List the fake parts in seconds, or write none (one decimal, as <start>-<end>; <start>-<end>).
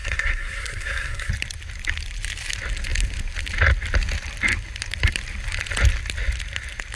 0.0-1.3